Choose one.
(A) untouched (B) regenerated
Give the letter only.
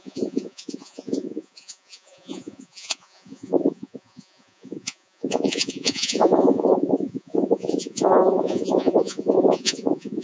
B